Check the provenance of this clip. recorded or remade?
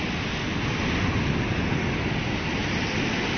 recorded